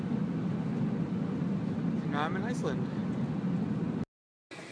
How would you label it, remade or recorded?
recorded